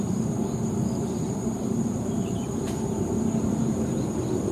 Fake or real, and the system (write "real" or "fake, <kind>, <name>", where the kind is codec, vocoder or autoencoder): fake, vocoder, BigVGAN v2